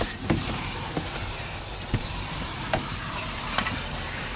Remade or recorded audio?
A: remade